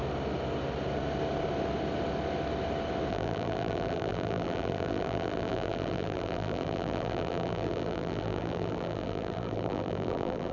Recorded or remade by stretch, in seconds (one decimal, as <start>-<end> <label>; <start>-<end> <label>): 0.0-3.1 recorded; 3.1-10.5 remade